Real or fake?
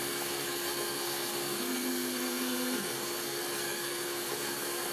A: fake